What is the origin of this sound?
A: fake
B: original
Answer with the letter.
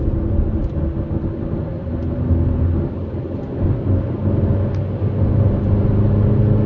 B